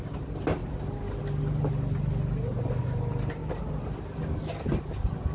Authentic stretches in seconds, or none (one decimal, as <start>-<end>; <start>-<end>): 0.0-5.3